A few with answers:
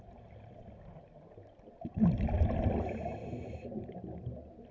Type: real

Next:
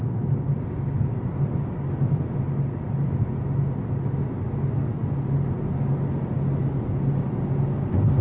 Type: real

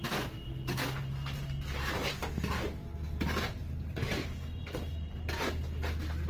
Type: real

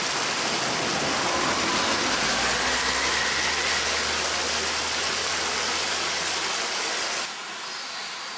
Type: real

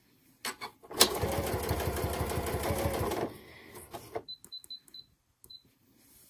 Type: real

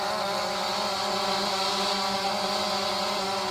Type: real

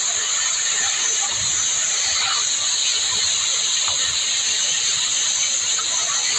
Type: real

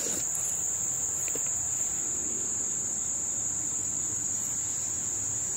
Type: fake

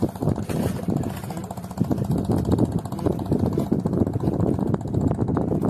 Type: real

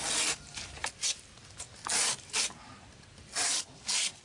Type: real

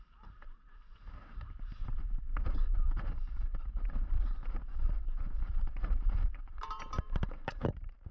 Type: fake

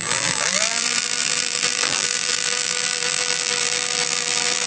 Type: fake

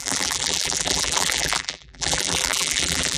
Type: fake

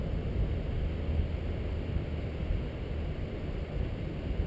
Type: real